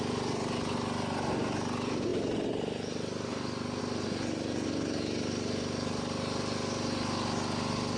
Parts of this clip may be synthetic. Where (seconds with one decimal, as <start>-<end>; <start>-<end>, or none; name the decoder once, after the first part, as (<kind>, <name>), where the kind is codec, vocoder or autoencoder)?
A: none